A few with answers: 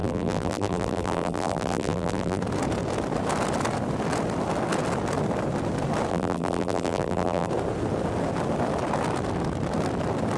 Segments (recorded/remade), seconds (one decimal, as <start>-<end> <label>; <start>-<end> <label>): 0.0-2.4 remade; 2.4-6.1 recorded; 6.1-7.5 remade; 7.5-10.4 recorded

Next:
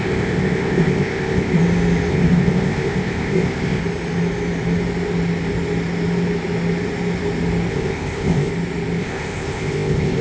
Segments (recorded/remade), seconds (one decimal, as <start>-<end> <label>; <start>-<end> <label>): 0.0-1.6 remade; 1.6-2.1 recorded; 2.1-3.8 remade; 3.8-7.7 recorded; 7.7-8.5 remade; 8.5-9.0 recorded; 9.0-10.2 remade

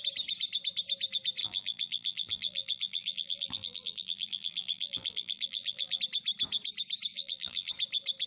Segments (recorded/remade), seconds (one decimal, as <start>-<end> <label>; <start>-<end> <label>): 0.0-1.4 recorded; 1.4-6.0 remade; 6.0-7.1 recorded; 7.1-7.7 remade; 7.7-8.3 recorded